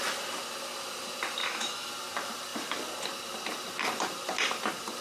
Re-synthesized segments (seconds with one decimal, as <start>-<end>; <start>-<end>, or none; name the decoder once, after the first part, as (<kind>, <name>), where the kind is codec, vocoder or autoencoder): 1.4-1.9 (autoencoder, DAC-VAE)